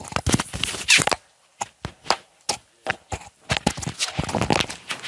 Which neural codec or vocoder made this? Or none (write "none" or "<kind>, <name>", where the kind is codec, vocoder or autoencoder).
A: none